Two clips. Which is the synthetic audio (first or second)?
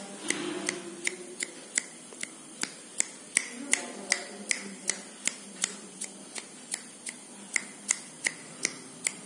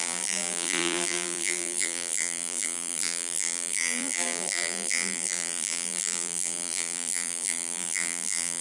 second